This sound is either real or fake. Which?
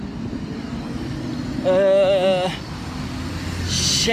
real